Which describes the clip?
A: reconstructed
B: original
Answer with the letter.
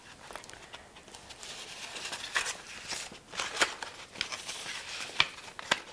B